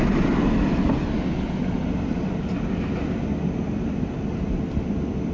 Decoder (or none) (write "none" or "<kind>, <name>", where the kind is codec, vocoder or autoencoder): none